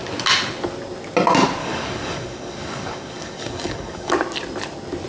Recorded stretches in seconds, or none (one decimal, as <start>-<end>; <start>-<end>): 0.0-1.6; 4.1-5.1